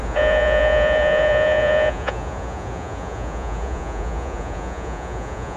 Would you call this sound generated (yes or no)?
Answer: yes